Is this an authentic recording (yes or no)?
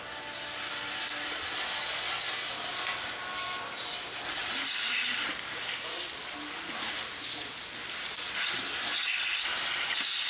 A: yes